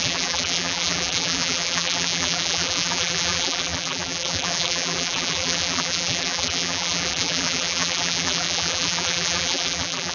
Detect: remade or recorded remade